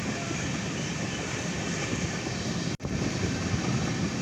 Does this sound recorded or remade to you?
recorded